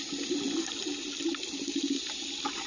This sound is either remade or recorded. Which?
recorded